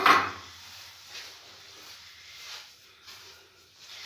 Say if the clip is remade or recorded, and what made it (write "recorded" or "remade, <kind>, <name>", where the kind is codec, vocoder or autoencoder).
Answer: remade, vocoder, BigVGAN v2